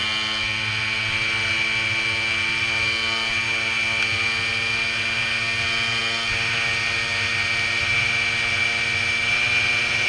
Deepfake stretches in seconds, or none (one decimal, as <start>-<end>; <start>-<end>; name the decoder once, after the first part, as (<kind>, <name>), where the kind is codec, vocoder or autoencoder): none